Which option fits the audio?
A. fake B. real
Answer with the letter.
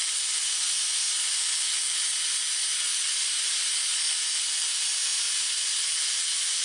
B